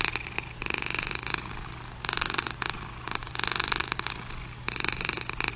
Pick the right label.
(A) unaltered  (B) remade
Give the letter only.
A